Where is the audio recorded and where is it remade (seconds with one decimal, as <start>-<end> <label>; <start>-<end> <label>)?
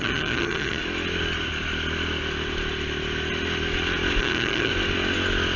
0.0-0.8 remade; 0.8-4.2 recorded; 4.2-4.7 remade; 4.7-5.6 recorded